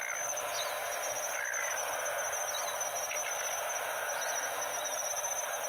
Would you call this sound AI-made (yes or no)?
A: no